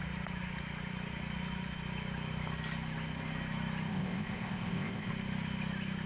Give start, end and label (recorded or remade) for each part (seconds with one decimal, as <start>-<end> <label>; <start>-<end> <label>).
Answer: 0.0-3.9 recorded; 3.9-5.1 remade; 5.1-6.1 recorded